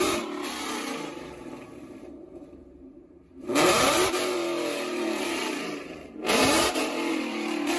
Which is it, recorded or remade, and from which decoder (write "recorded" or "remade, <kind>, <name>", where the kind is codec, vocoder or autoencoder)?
remade, vocoder, BigVGAN v2